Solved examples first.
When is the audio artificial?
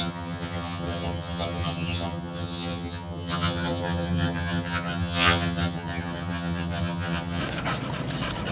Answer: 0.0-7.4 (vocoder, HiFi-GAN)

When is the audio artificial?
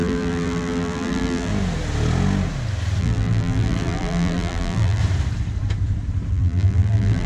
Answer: 0.0-1.5 (vocoder, BigVGAN v2); 3.0-5.0; 6.3-7.3